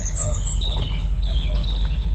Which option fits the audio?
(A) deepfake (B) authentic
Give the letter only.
A